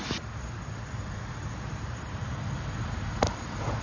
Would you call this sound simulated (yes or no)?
no